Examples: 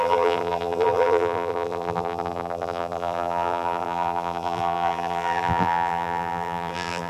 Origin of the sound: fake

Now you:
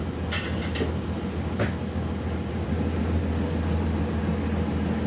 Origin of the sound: real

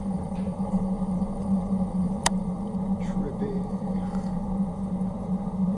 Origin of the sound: fake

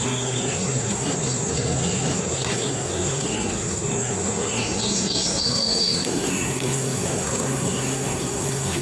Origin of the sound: fake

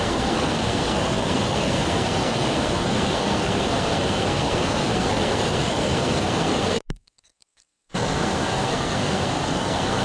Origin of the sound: fake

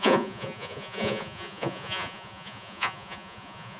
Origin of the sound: fake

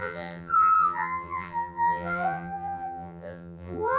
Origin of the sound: fake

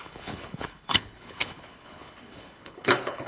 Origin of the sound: fake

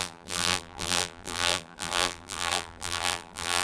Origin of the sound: fake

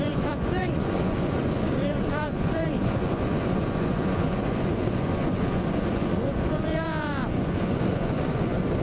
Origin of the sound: fake